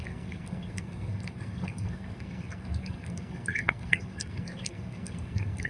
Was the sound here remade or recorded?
remade